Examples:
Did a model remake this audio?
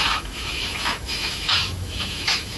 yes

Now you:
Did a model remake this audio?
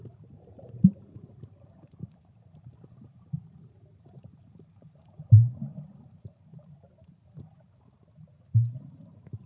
yes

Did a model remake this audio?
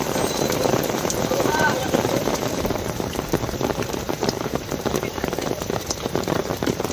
yes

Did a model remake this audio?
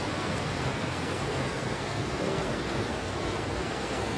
yes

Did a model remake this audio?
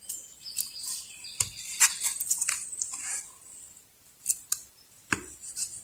yes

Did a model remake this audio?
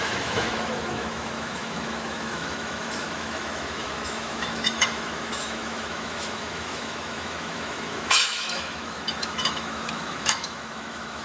yes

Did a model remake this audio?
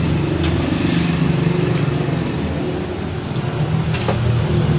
no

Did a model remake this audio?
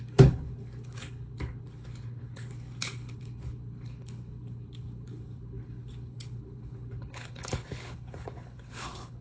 yes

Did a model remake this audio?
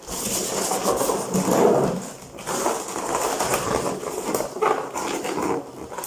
no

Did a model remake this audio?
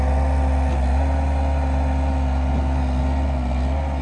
no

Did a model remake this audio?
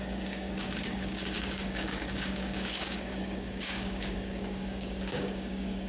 yes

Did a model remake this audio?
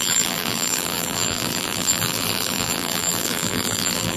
yes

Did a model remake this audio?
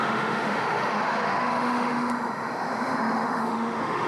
yes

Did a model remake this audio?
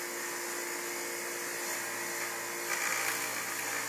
no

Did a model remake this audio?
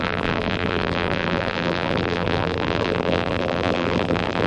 yes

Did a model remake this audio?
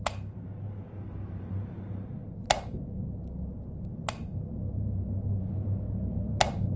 no